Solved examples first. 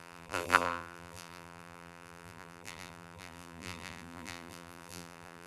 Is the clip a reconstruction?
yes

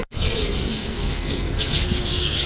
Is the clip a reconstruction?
yes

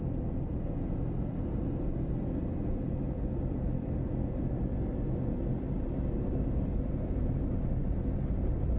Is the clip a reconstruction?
no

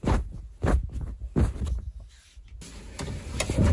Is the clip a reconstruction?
no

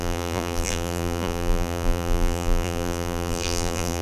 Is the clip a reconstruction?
yes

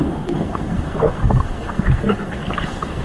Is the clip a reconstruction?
yes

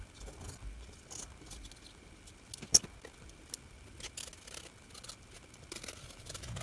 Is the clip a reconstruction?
no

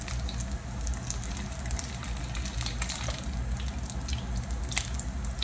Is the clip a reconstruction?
no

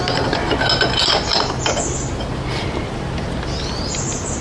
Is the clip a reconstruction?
no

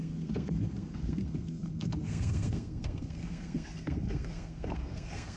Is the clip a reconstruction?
yes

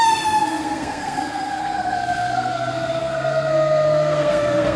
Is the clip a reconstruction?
yes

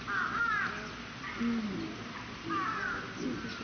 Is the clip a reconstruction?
no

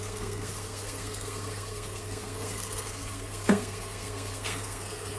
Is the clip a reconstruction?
yes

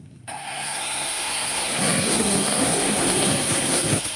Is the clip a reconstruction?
yes